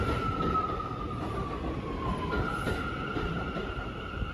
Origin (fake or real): fake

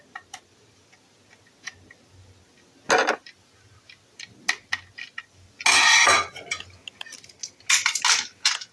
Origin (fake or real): real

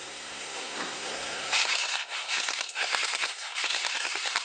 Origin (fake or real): fake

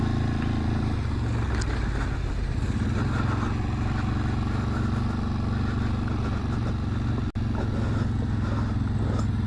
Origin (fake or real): real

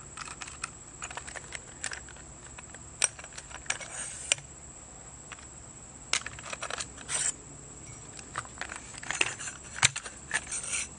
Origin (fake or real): real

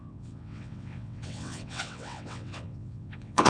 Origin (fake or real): fake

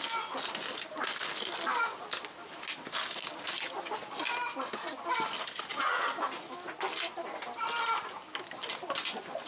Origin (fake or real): real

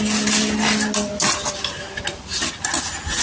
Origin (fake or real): real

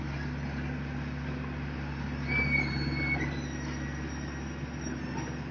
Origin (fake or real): real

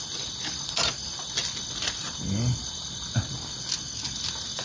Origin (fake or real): real